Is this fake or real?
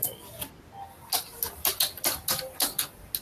real